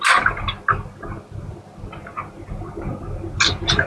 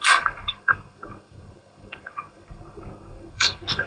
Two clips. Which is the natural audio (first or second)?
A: first